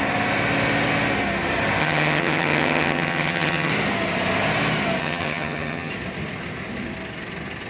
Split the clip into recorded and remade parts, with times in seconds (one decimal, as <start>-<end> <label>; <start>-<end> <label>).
0.0-1.8 recorded; 1.8-3.7 remade; 3.7-5.0 recorded; 5.0-5.9 remade; 5.9-7.7 recorded